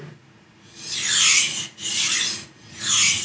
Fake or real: fake